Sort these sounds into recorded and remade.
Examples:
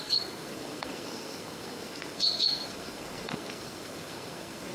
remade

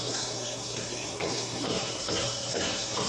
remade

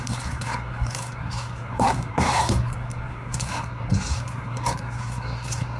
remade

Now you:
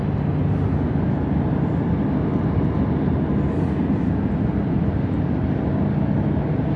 recorded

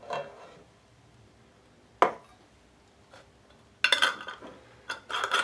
recorded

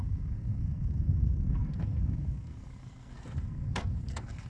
remade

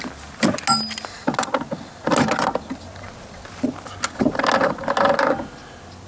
recorded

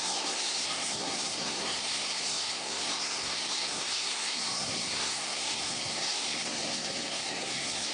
remade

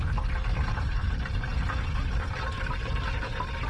recorded